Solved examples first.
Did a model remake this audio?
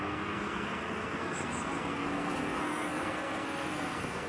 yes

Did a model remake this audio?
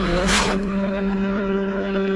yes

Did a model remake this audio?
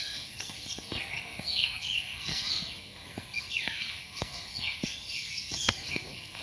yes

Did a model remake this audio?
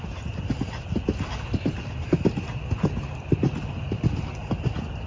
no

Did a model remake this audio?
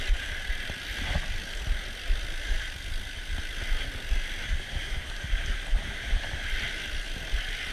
no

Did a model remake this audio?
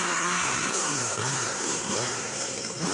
yes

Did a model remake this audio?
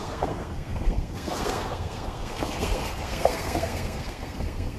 yes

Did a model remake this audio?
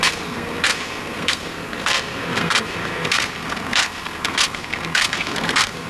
yes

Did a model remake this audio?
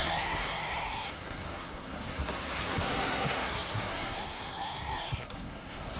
yes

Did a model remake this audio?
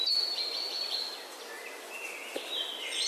no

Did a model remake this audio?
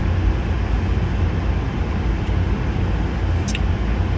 no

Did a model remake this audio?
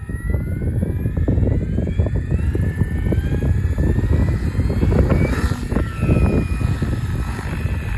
no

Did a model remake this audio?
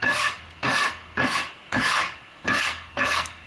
yes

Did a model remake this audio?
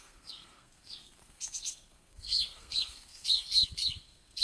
yes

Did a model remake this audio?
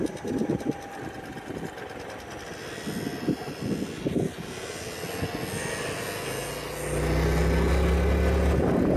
no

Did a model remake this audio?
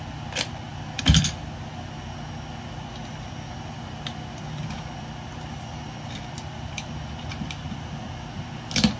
no